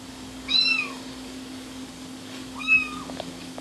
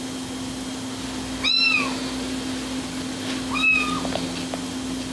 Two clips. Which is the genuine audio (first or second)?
second